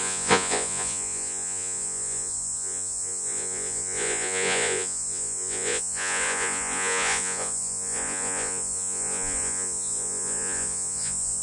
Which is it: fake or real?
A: fake